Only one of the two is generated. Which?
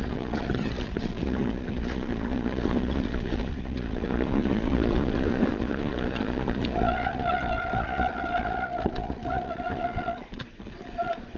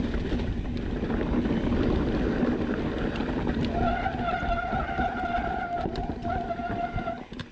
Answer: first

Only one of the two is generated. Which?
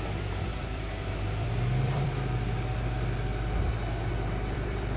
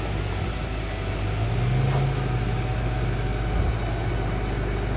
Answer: first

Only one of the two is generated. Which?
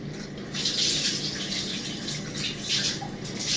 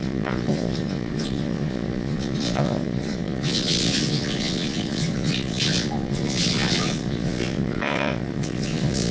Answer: second